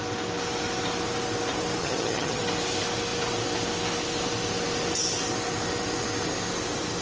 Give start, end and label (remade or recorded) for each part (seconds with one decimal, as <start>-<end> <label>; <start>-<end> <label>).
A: 0.0-1.8 recorded; 1.8-2.4 remade; 2.4-7.0 recorded